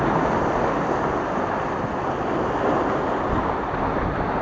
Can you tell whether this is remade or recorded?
recorded